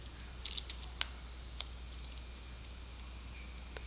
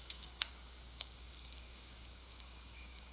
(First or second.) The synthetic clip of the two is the second